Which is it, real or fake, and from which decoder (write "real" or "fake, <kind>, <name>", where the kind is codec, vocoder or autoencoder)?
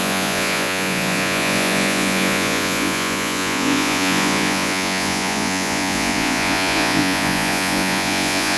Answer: fake, vocoder, Vocos